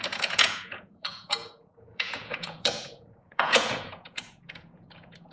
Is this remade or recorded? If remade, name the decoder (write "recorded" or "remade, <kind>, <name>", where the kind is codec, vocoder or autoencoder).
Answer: remade, vocoder, Vocos